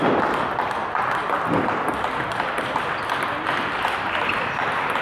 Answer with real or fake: real